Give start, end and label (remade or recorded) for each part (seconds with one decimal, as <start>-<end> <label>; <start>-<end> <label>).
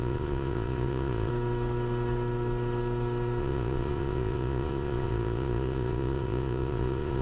0.0-1.3 remade; 1.3-3.4 recorded; 3.4-7.2 remade